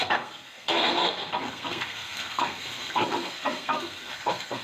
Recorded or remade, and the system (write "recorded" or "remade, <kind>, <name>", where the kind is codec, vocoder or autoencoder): remade, codec, SNAC